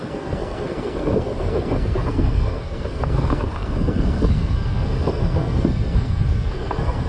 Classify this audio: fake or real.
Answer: fake